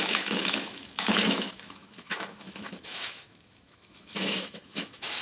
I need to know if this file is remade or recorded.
remade